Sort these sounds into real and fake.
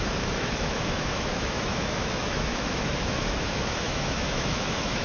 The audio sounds fake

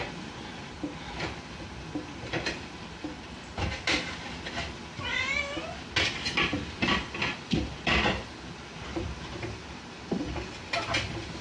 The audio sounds real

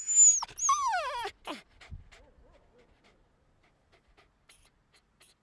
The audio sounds real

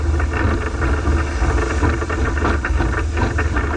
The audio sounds real